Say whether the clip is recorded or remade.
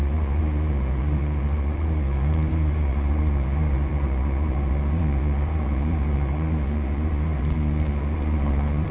remade